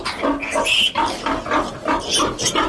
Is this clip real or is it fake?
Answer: real